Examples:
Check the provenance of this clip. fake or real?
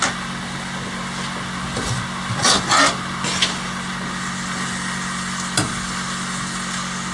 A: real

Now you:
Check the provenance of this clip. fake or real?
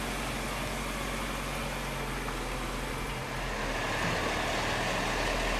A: real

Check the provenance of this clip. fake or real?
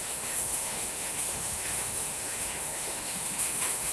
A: fake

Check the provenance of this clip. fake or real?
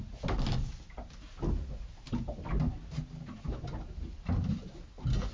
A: real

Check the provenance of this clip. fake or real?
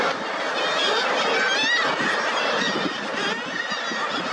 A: real